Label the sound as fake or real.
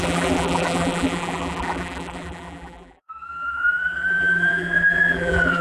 fake